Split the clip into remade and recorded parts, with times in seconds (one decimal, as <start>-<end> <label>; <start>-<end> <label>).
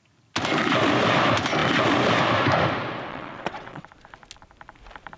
0.0-3.1 recorded; 3.1-3.9 remade; 3.9-5.2 recorded